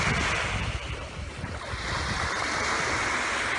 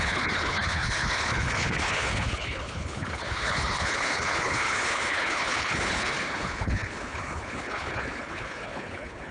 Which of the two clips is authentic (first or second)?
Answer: first